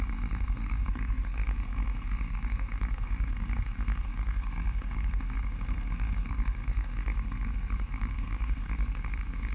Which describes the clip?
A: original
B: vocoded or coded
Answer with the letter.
B